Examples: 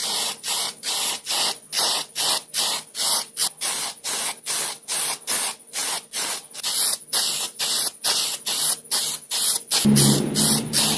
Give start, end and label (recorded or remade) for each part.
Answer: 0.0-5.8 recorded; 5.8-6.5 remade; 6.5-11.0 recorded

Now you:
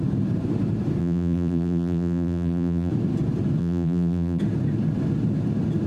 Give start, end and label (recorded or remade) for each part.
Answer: 0.0-1.0 recorded; 1.0-2.9 remade; 2.9-3.6 recorded; 3.6-4.4 remade; 4.4-5.9 recorded

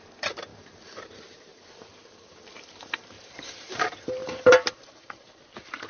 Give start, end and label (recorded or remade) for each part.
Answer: 0.0-0.5 recorded; 0.5-1.0 remade; 1.0-1.5 recorded; 1.5-3.7 remade; 3.7-4.2 recorded; 4.2-5.4 remade; 5.4-5.9 recorded

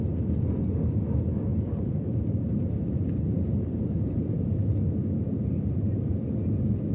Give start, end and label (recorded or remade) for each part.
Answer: 0.0-1.5 recorded; 1.5-4.8 remade; 4.8-5.5 recorded; 5.5-6.1 remade; 6.1-6.9 recorded